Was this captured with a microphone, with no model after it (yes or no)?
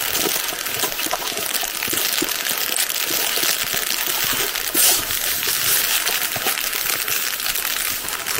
yes